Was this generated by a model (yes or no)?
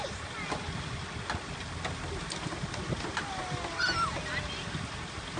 no